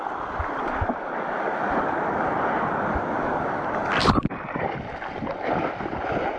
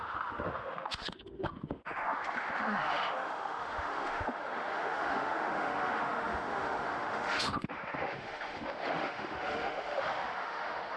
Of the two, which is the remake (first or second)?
second